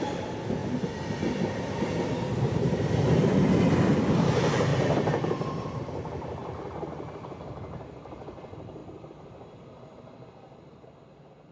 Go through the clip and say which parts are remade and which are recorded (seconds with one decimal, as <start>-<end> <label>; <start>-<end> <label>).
0.0-4.7 recorded; 4.7-5.8 remade; 5.8-8.8 recorded; 8.8-9.5 remade; 9.5-11.5 recorded